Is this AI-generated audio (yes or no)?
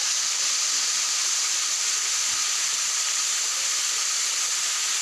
no